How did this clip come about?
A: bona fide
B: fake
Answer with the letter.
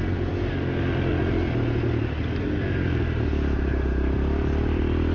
A